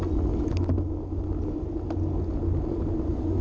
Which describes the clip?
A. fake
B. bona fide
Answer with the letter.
B